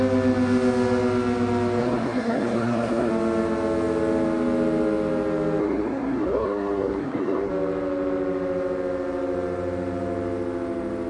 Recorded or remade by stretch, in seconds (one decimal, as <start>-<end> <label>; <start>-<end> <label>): 0.0-1.8 recorded; 1.8-3.1 remade; 3.1-5.6 recorded; 5.6-7.5 remade; 7.5-11.1 recorded